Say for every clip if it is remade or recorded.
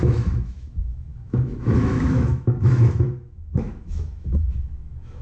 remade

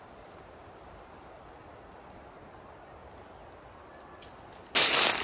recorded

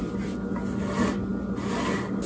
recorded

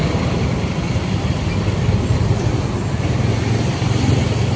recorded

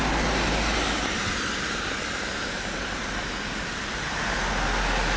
recorded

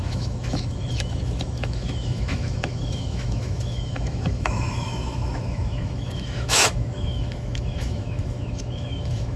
remade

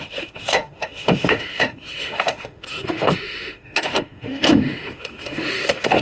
remade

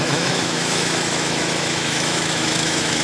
remade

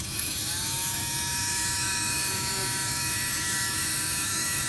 remade